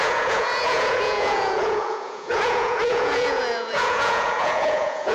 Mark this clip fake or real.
fake